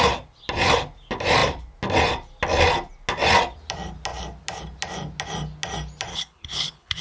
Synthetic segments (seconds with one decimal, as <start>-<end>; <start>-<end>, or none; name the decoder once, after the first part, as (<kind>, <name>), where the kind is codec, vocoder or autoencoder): 6.1-7.0 (codec, HILCodec)